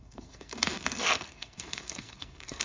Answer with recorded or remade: remade